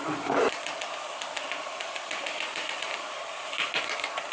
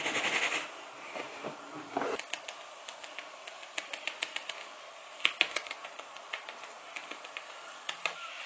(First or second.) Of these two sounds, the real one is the second